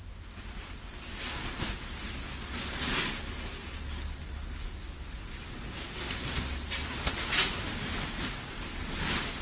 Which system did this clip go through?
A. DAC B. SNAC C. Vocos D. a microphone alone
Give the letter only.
D